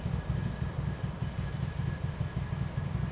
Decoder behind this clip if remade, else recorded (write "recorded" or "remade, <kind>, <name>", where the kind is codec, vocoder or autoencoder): recorded